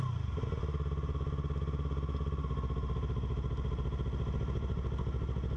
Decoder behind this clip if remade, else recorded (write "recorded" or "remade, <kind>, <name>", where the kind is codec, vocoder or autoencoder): recorded